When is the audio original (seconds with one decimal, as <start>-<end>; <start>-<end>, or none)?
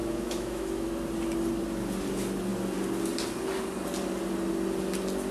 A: 0.9-5.3